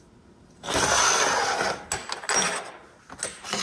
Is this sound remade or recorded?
recorded